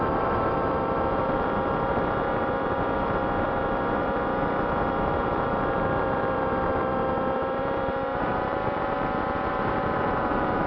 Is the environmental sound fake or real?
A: fake